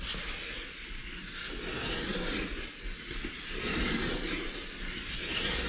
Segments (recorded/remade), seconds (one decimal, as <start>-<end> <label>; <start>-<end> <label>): 0.0-5.7 recorded